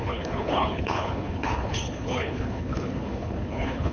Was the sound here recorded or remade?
remade